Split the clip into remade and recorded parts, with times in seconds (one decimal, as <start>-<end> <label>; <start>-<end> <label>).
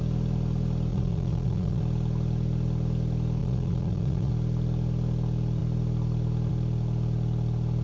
0.0-0.9 recorded; 0.9-1.8 remade; 1.8-3.4 recorded; 3.4-4.3 remade; 4.3-7.8 recorded